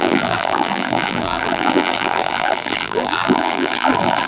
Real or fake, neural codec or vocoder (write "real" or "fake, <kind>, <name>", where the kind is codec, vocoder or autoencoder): fake, vocoder, BigVGAN v2